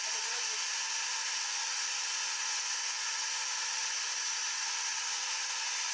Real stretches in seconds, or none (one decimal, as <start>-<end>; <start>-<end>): 0.0-2.4; 3.1-5.9

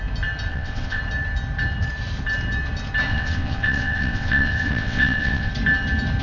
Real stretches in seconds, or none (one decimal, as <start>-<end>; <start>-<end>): 0.0-0.5; 1.0-3.1; 5.5-6.2

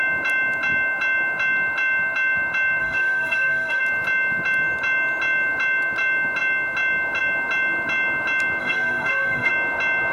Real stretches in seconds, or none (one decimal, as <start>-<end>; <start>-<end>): 0.0-2.8; 3.8-8.6; 9.5-10.1